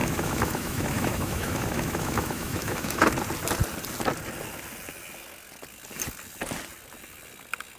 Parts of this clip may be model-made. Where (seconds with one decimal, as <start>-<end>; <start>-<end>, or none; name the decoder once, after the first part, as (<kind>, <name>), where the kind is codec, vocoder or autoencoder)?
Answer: 0.0-3.1 (autoencoder, DAC-VAE)